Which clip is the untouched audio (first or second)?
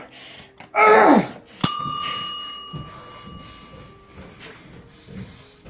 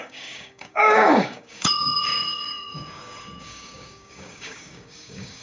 first